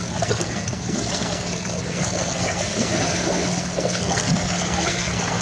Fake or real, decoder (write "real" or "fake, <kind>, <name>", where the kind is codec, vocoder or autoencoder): fake, codec, SNAC